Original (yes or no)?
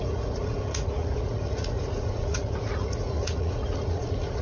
no